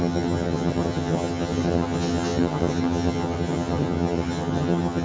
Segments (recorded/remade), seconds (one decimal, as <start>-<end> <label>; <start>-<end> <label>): 0.0-5.0 remade